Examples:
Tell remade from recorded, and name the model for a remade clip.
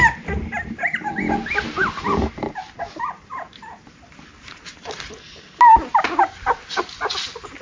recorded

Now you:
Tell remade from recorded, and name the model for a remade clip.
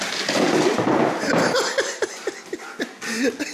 recorded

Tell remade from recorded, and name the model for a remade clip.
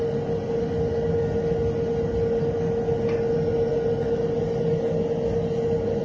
recorded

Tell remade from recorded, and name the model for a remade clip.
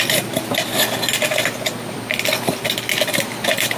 recorded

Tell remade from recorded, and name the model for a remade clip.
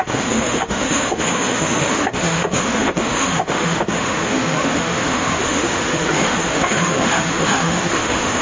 remade, autoencoder, DAC-VAE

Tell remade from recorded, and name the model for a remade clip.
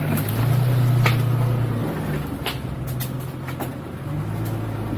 recorded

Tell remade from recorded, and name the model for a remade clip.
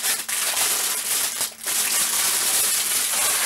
recorded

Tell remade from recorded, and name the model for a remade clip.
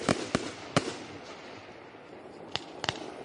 recorded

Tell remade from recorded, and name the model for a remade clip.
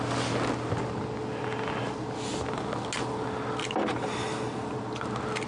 recorded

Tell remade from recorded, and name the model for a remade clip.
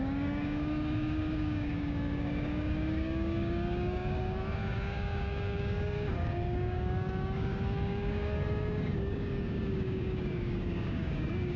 remade, codec, DAC